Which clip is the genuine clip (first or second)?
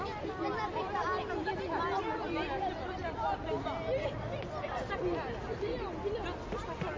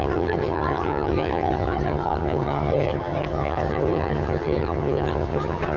first